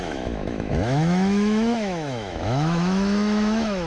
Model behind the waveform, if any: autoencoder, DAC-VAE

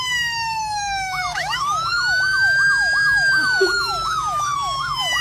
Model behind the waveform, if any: autoencoder, DAC-VAE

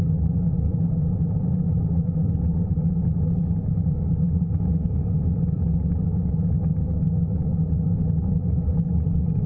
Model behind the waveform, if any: none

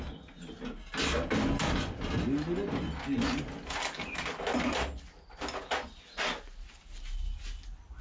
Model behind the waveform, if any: none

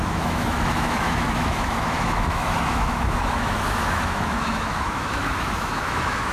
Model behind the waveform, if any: autoencoder, DAC-VAE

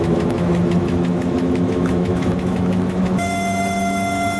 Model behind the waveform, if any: autoencoder, DAC-VAE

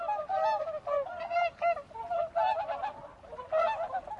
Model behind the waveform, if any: none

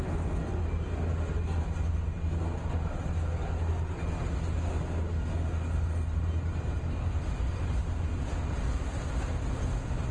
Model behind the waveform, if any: none